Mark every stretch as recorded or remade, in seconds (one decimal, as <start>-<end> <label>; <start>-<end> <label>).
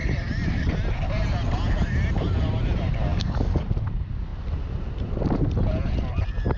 0.0-3.1 recorded; 3.1-3.6 remade; 3.6-6.6 recorded